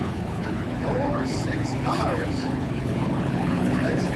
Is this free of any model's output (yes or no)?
no